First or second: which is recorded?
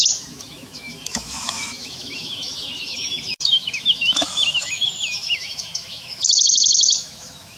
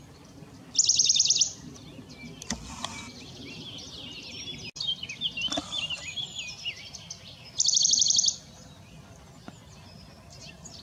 second